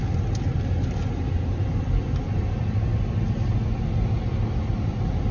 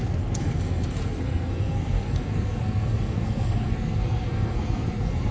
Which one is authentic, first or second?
first